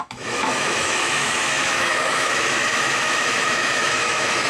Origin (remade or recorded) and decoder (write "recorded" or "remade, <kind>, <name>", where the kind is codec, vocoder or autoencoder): remade, autoencoder, DAC-VAE